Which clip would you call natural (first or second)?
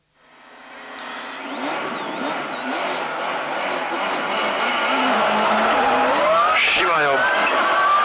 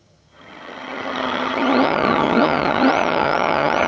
first